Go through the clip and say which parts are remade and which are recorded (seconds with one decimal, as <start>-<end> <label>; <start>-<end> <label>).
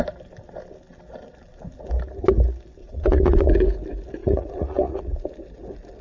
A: 0.0-2.8 recorded; 2.8-3.5 remade; 3.5-4.2 recorded; 4.2-5.3 remade; 5.3-6.0 recorded